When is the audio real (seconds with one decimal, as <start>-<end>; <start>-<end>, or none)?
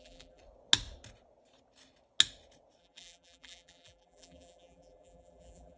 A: 0.4-2.8